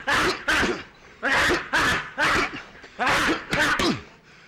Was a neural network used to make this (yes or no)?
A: no